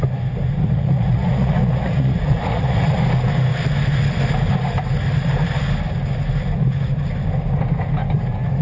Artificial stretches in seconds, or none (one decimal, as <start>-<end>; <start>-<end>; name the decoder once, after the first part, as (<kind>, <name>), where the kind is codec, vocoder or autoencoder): 0.6-2.9 (vocoder, Vocos)